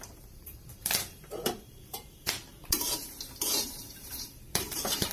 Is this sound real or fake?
fake